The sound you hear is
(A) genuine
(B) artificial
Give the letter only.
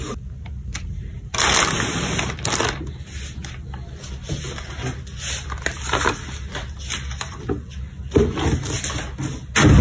A